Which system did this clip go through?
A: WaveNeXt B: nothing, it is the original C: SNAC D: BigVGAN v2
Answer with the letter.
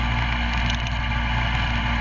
B